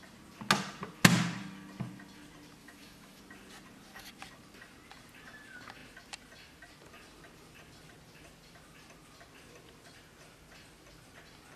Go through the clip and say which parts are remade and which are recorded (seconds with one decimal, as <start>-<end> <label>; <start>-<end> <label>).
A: 0.0-2.6 recorded; 2.6-3.2 remade; 3.2-11.6 recorded

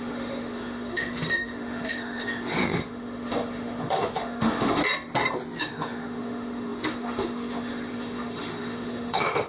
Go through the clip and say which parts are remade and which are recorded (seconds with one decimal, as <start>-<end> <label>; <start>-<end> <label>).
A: 0.0-4.8 remade; 4.8-5.6 recorded; 5.6-9.5 remade

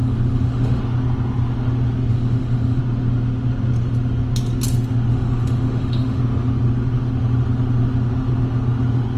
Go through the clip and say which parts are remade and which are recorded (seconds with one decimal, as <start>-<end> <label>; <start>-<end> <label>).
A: 0.0-0.8 remade; 0.8-2.1 recorded; 2.1-2.8 remade; 2.8-5.1 recorded; 5.1-6.2 remade; 6.2-9.2 recorded

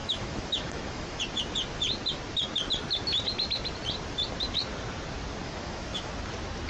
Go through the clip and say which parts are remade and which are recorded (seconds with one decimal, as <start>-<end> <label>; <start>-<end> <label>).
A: 0.0-1.2 remade; 1.2-5.4 recorded; 5.4-6.1 remade; 6.1-6.7 recorded

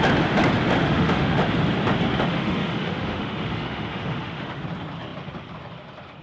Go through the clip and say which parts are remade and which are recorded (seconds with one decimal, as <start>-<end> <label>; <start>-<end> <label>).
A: 0.0-0.8 recorded; 0.8-1.4 remade; 1.4-2.3 recorded; 2.3-4.6 remade; 4.6-6.2 recorded